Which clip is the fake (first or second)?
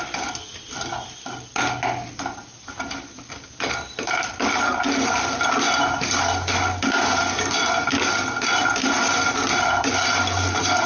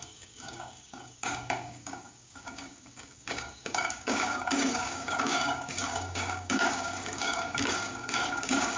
second